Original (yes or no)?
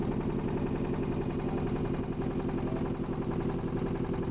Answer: yes